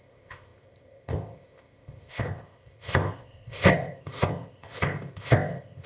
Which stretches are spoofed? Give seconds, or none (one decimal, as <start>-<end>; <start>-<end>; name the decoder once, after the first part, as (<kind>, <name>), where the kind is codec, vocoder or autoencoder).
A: 0.0-5.9 (codec, ZipCodec)